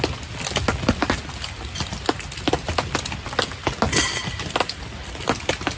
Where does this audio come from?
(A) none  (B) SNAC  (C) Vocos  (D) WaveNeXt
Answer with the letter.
A